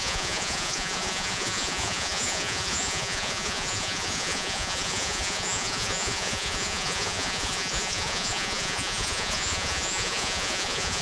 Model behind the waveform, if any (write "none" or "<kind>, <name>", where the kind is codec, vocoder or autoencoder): vocoder, Vocos